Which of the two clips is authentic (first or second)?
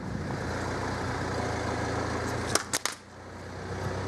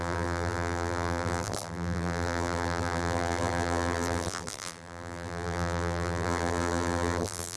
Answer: first